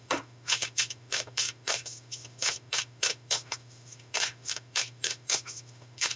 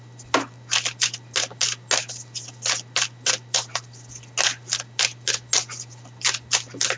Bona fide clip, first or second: second